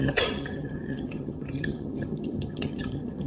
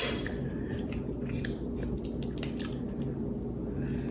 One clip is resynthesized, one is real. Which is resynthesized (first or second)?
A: first